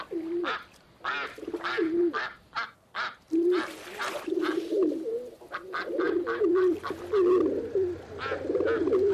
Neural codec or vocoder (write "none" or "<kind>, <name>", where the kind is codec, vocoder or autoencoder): none